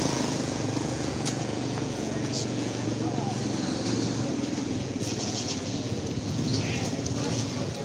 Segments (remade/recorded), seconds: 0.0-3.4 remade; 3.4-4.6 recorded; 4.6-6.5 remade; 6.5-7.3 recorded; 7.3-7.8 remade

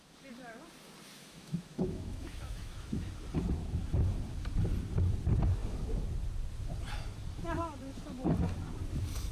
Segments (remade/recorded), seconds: 0.0-1.2 recorded; 1.2-3.1 remade; 3.1-9.3 recorded

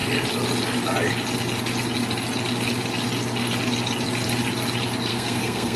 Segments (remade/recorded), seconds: 0.0-5.1 recorded; 5.1-5.8 remade

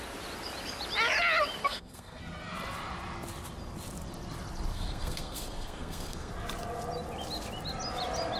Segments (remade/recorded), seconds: 0.0-1.6 recorded; 1.6-2.2 remade; 2.2-4.7 recorded; 4.7-6.3 remade; 6.3-8.4 recorded

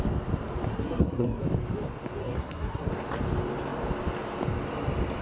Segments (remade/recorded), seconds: 0.0-0.7 recorded; 0.7-1.4 remade; 1.4-2.2 recorded; 2.2-2.9 remade; 2.9-5.2 recorded

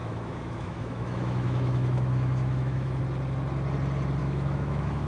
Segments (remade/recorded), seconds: 0.0-3.0 remade; 3.0-4.2 recorded; 4.2-5.1 remade